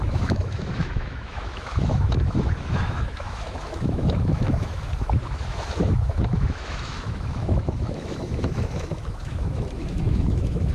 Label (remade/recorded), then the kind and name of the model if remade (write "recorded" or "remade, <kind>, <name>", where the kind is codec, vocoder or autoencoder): remade, autoencoder, DAC-VAE